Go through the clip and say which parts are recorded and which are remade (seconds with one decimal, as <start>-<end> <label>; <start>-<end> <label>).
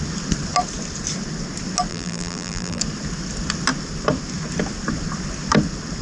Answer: 0.0-1.9 recorded; 1.9-2.8 remade; 2.8-6.0 recorded